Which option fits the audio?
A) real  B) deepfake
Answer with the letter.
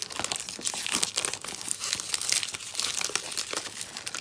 A